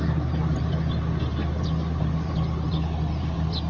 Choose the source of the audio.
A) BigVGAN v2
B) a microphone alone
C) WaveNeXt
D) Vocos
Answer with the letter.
B